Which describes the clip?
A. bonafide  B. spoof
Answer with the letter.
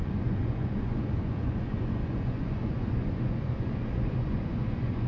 B